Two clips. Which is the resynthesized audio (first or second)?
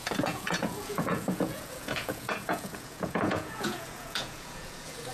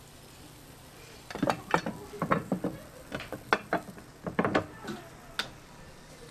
first